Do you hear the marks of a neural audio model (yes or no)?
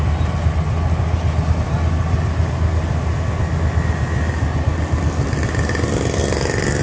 no